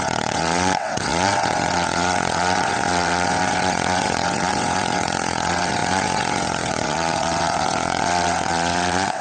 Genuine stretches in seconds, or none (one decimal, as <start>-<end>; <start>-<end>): none